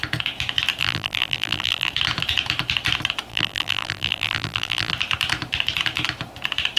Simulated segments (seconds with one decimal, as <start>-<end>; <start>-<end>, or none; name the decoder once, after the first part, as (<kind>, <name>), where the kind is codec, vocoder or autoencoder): 0.8-1.9 (vocoder, BigVGAN v2); 3.3-4.9